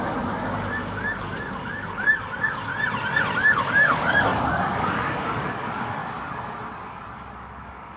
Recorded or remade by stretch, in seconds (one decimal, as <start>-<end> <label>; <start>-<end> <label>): 0.0-2.7 remade; 2.7-3.4 recorded; 3.4-6.0 remade; 6.0-6.9 recorded; 6.9-8.0 remade